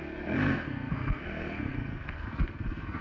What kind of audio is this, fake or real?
fake